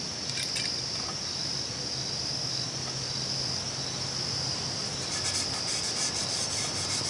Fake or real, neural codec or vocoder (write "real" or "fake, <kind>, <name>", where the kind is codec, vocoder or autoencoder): real